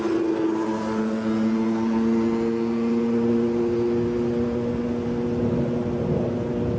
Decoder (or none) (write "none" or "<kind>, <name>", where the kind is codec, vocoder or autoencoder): none